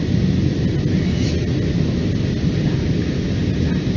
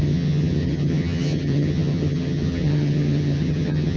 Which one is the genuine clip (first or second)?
first